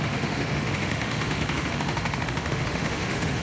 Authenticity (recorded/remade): remade